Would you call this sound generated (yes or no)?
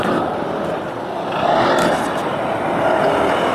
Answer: no